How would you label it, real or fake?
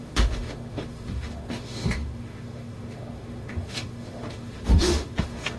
fake